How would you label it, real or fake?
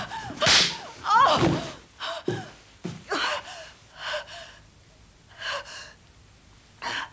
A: real